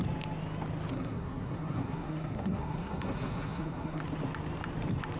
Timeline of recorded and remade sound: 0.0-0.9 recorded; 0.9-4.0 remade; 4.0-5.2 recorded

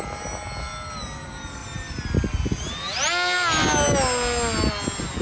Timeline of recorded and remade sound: 0.0-5.2 recorded

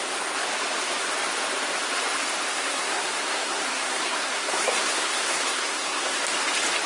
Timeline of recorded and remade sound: 0.0-2.5 recorded; 2.5-6.2 remade; 6.2-6.9 recorded

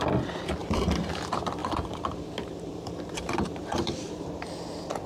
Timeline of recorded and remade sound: 0.0-0.6 recorded; 0.6-1.2 remade; 1.2-1.6 recorded; 1.6-4.3 remade; 4.3-5.1 recorded

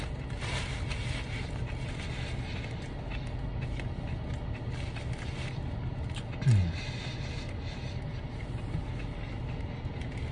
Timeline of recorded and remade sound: 0.0-10.3 recorded

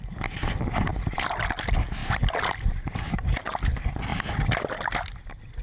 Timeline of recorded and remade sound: 0.0-2.0 recorded; 2.0-3.4 remade; 3.4-5.6 recorded